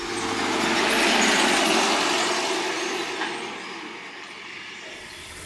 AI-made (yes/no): no